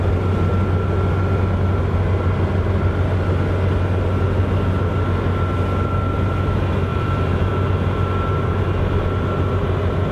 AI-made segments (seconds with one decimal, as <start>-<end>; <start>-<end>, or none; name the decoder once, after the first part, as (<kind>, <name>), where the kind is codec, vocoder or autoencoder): 6.9-7.5 (vocoder, BigVGAN v2)